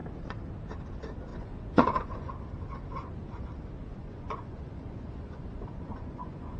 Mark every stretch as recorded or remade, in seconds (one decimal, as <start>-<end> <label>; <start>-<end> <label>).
0.0-1.3 recorded; 1.3-2.3 remade; 2.3-4.0 recorded; 4.0-6.6 remade